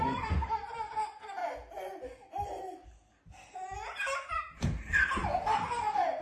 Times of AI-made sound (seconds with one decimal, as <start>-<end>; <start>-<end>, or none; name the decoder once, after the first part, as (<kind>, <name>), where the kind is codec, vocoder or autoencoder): 0.0-1.4 (vocoder, BigVGAN v2); 4.3-5.2

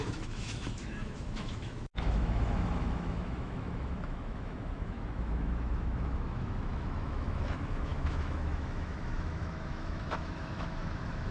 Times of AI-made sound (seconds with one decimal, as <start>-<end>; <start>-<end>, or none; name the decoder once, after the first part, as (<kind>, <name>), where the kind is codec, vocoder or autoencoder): 0.0-11.3 (autoencoder, DAC-VAE)

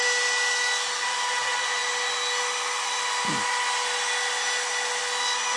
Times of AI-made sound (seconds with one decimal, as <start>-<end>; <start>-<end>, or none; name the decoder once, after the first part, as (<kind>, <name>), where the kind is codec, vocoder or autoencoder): none

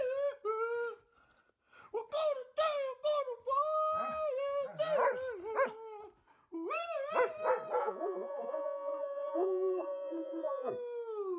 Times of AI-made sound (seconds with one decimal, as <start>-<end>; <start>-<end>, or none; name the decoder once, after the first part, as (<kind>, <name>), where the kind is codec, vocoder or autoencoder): 7.8-10.7 (vocoder, Vocos)

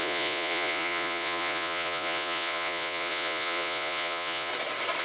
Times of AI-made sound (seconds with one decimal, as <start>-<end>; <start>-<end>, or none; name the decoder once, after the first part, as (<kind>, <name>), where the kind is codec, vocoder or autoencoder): 0.0-4.5 (vocoder, Vocos)

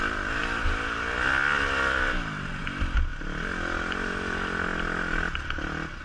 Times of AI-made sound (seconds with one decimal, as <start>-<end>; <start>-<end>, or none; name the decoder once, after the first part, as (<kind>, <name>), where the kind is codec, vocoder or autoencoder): none